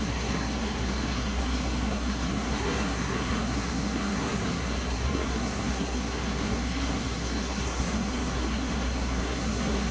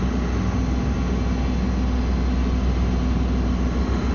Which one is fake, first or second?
first